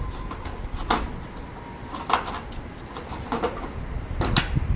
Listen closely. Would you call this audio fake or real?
real